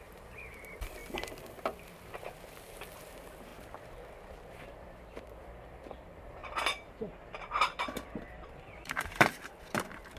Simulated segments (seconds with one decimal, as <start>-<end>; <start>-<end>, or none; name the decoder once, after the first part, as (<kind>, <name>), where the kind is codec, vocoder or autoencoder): 0.0-1.0 (vocoder, BigVGAN v2); 2.1-6.4; 7.4-10.2